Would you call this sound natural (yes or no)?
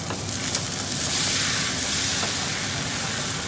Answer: yes